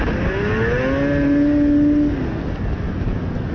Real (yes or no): yes